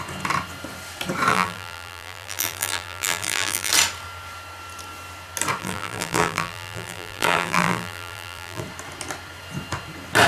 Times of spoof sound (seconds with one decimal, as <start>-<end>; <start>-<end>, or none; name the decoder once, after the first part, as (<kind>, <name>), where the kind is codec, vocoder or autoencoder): 1.3-3.7 (vocoder, BigVGAN v2); 5.6-8.6